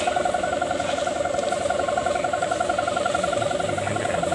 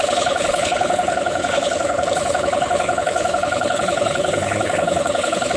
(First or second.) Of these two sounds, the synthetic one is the second